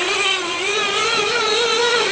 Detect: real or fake fake